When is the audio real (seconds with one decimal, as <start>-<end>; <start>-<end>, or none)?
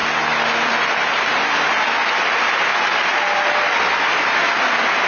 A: 0.0-5.1